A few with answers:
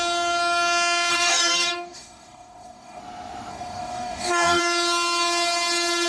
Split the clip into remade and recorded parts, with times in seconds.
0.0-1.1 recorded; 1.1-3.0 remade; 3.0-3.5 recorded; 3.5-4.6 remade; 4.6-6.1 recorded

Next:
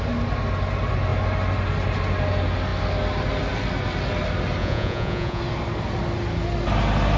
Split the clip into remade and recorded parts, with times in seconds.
0.0-4.6 recorded; 4.6-5.4 remade; 5.4-7.2 recorded

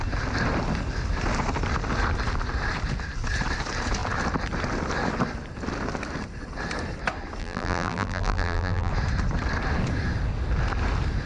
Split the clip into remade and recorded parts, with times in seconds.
0.0-7.4 recorded; 7.4-8.9 remade; 8.9-11.3 recorded

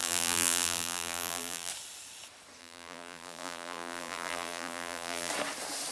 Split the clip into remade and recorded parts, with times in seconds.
0.0-1.7 remade; 1.7-2.6 recorded; 2.6-5.3 remade; 5.3-5.9 recorded

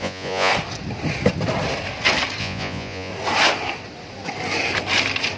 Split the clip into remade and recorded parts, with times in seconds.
0.0-0.5 remade; 0.5-2.4 recorded; 2.4-3.1 remade; 3.1-5.4 recorded

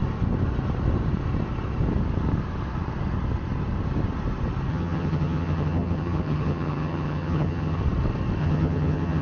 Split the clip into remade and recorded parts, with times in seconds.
0.0-4.7 recorded; 4.7-7.8 remade; 7.8-8.4 recorded; 8.4-9.2 remade

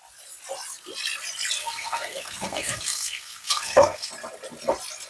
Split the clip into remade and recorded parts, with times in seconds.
0.0-1.6 recorded; 1.6-4.1 remade; 4.1-5.1 recorded

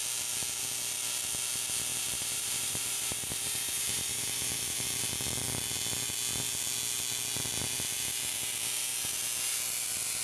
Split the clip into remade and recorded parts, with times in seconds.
0.0-1.9 recorded; 1.9-5.1 remade; 5.1-10.2 recorded